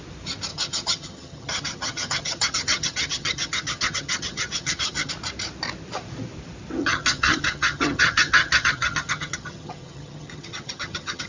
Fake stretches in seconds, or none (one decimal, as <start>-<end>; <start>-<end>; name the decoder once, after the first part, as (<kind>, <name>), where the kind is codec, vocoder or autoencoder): 0.5-5.1 (vocoder, HiFi-GAN); 6.8-11.3